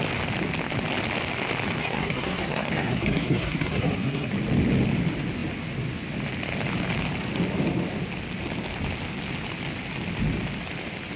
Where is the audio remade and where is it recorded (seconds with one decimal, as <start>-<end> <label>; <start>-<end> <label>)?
0.0-1.8 recorded; 1.8-4.3 remade; 4.3-11.2 recorded